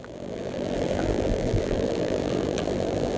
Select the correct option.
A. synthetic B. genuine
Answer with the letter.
A